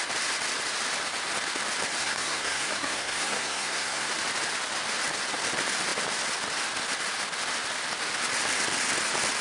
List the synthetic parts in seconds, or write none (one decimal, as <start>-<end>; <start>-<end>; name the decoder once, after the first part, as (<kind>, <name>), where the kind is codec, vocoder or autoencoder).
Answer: 2.0-4.1 (codec, SNAC)